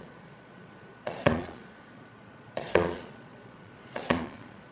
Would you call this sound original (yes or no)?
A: no